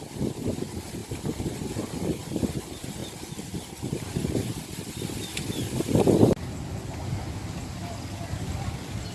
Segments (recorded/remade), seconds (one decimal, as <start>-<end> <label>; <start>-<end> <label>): 0.0-9.1 recorded